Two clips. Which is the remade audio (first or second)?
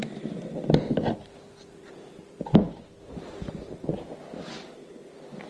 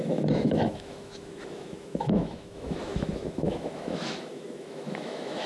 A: second